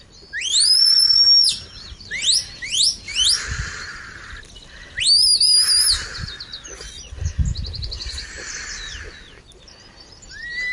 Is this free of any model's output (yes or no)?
yes